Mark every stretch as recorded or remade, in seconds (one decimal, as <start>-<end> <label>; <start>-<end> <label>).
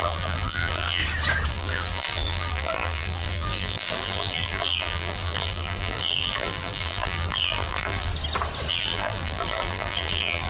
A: 0.0-1.0 remade; 1.0-1.5 recorded; 1.5-8.1 remade; 8.1-8.7 recorded; 8.7-10.5 remade